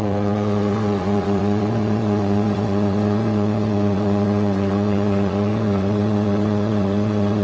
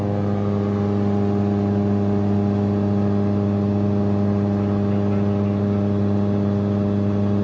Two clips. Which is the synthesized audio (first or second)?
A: first